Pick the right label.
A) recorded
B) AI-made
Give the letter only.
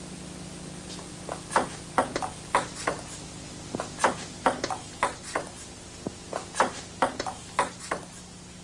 A